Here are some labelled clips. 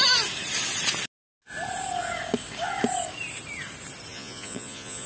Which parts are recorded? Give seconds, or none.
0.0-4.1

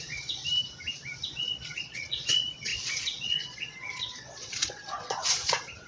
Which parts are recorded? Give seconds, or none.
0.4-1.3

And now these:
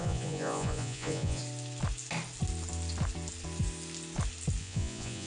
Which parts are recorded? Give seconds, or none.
1.4-4.6